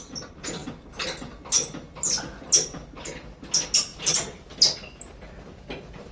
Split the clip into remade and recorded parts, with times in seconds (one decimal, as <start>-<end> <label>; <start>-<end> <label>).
0.0-6.1 recorded